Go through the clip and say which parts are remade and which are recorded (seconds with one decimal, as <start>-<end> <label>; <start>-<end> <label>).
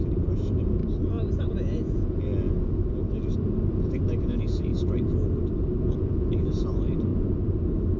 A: 0.0-0.8 remade; 0.8-1.5 recorded; 1.5-2.3 remade; 2.3-3.7 recorded; 3.7-4.7 remade; 4.7-5.9 recorded; 5.9-7.1 remade; 7.1-8.0 recorded